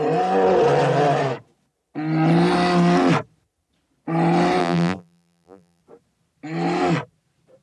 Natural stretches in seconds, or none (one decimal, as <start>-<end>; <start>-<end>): 0.0-4.6; 5.8-7.6